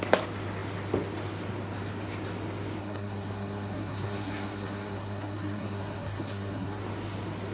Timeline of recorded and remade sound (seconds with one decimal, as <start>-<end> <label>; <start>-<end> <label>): 0.0-2.8 recorded; 2.8-6.8 remade; 6.8-7.5 recorded